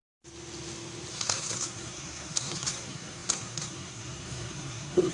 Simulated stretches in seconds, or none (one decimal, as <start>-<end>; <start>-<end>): 1.1-5.1